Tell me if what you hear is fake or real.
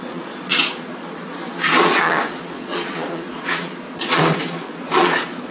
fake